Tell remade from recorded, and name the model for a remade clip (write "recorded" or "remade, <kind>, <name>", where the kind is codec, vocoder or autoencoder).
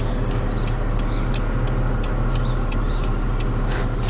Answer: recorded